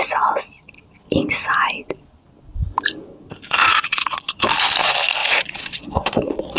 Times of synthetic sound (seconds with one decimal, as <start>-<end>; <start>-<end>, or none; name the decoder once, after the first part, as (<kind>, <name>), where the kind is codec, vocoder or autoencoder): 3.6-4.4 (vocoder, Vocos); 5.2-6.6